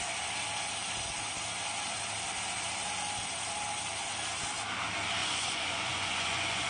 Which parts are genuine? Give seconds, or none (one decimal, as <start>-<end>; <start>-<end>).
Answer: 0.0-5.2